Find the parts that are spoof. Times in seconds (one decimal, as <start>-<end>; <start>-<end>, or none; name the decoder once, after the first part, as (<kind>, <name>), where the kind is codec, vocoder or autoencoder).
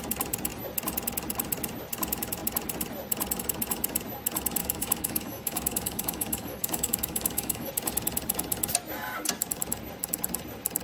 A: 4.6-7.7 (codec, DAC)